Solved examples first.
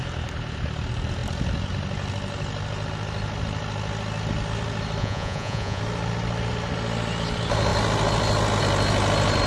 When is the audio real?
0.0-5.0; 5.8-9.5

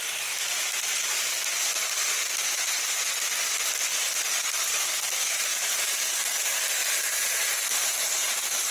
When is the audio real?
0.0-1.6; 2.3-6.8; 7.7-8.7

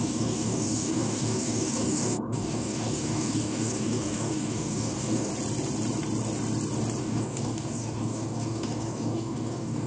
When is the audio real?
5.3-7.0